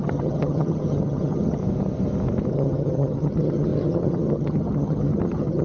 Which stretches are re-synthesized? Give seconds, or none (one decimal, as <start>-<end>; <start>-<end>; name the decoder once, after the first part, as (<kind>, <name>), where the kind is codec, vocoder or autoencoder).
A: 0.0-1.6 (vocoder, HiFi-GAN); 2.5-5.6